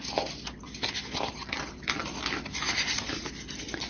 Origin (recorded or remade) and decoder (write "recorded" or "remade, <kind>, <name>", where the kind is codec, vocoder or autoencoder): recorded